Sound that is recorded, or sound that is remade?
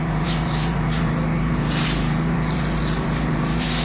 remade